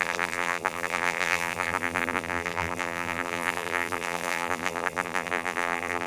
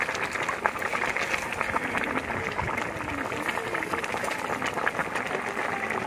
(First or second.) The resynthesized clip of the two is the first